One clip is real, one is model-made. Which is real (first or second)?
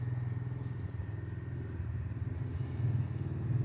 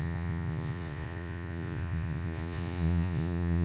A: first